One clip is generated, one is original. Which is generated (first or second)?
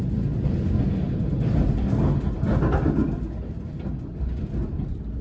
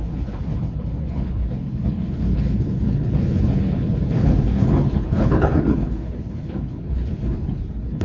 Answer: second